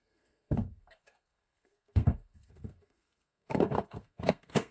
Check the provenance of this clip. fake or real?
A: fake